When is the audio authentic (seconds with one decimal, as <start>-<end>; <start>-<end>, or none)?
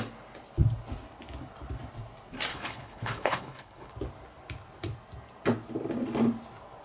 0.0-2.5; 3.9-6.8